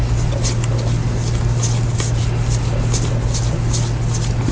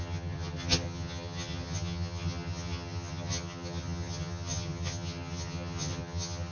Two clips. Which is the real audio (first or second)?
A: first